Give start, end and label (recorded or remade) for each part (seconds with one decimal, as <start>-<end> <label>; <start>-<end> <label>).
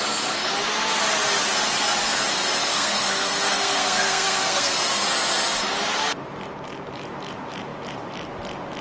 0.0-2.7 recorded; 2.7-4.7 remade; 4.7-8.8 recorded